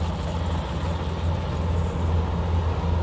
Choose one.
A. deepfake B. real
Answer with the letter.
B